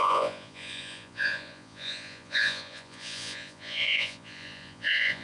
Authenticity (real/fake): fake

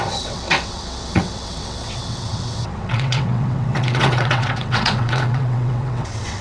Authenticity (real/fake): fake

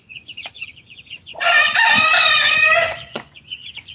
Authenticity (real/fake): fake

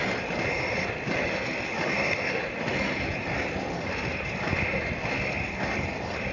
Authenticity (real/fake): real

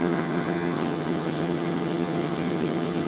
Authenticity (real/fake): fake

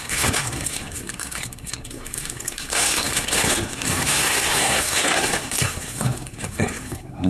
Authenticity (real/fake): fake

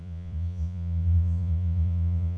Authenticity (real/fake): fake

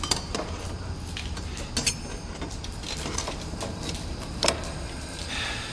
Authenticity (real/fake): real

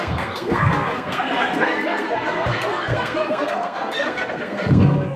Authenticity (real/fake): fake